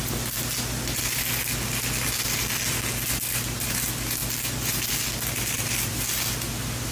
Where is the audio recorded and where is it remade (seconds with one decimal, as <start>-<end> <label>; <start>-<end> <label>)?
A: 0.0-6.9 recorded